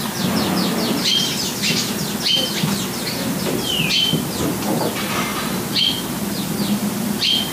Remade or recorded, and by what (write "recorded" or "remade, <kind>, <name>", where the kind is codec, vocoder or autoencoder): recorded